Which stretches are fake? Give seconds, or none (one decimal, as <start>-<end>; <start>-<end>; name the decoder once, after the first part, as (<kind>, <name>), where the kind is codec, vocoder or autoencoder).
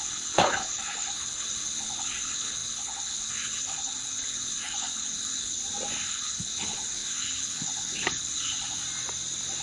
0.0-5.6 (codec, HILCodec); 6.1-8.8